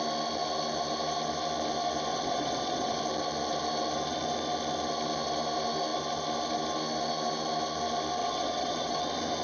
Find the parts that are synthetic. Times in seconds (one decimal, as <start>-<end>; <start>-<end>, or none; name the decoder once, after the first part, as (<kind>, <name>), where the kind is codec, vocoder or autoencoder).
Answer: 2.1-3.0 (vocoder, WaveNeXt); 8.2-9.0

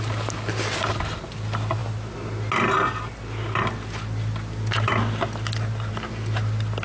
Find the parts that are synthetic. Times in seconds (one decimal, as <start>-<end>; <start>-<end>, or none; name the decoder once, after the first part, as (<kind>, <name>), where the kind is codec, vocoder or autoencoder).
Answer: none